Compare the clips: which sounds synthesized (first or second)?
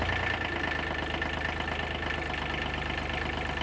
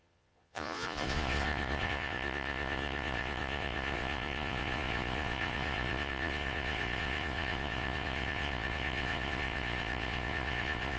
second